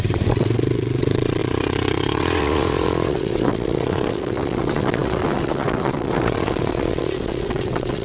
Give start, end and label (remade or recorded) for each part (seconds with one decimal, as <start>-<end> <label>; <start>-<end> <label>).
0.0-8.0 remade